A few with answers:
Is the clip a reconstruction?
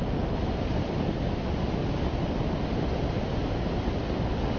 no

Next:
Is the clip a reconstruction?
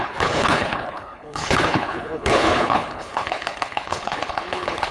yes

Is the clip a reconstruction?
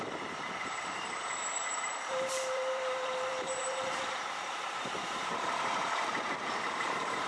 yes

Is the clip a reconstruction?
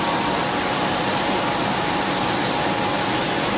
no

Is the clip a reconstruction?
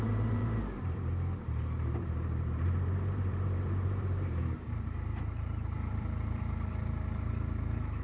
yes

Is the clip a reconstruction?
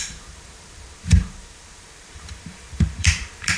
yes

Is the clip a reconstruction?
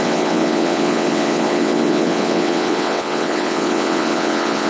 yes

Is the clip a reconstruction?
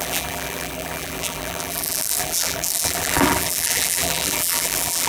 yes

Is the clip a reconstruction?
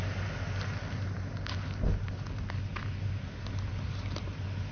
no